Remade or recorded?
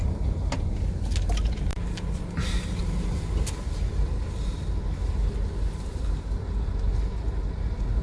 recorded